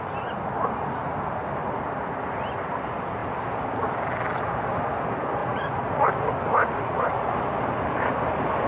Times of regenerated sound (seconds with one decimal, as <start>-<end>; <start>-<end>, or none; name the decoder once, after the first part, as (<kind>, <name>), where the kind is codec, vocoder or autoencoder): 5.4-6.1 (vocoder, Vocos); 6.6-7.3